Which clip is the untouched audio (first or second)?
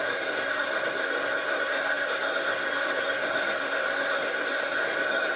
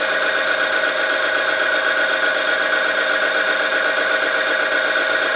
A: second